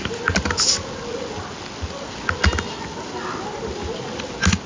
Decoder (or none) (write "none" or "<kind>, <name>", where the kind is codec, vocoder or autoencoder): none